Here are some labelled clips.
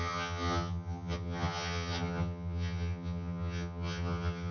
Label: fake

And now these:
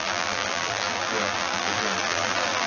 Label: fake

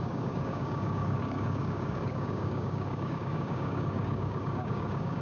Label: fake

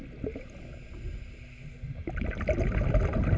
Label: real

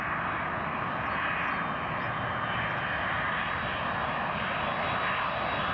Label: real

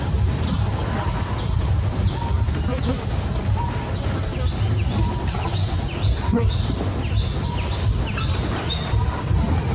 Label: real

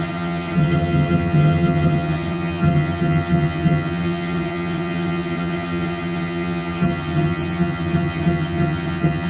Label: fake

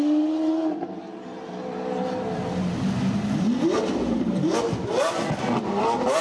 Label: real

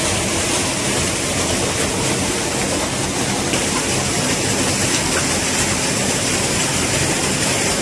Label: real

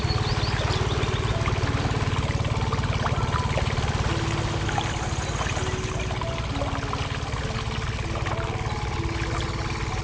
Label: real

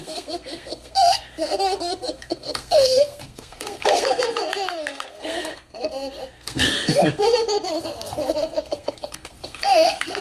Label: fake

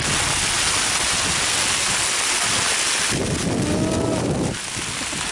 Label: real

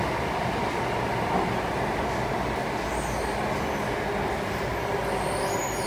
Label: real